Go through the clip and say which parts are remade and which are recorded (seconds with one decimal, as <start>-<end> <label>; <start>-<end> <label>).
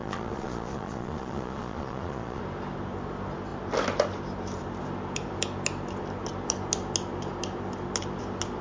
0.0-2.4 remade; 2.4-8.6 recorded